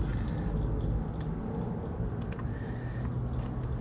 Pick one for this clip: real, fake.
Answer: real